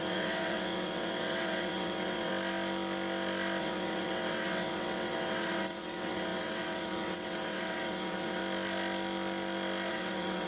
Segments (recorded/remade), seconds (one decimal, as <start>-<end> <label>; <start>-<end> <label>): 0.0-2.3 remade; 2.3-3.6 recorded; 3.6-8.4 remade; 8.4-9.9 recorded; 9.9-10.5 remade